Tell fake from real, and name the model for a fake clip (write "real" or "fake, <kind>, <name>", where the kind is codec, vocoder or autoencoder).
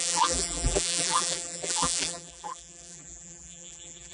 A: fake, vocoder, BigVGAN v2